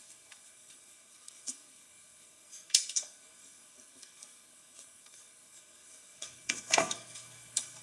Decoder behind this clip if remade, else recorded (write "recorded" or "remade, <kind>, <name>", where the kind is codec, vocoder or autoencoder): remade, codec, SNAC